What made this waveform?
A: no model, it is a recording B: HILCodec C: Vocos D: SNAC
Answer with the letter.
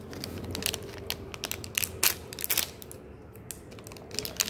A